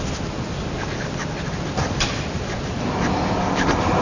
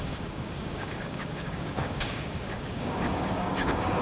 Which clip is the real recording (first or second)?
first